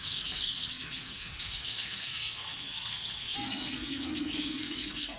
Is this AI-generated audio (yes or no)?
yes